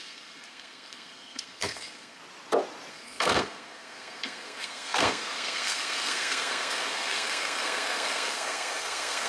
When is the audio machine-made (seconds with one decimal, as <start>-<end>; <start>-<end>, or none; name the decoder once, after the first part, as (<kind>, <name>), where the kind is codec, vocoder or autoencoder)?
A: 0.0-2.2 (codec, SNAC); 2.9-9.3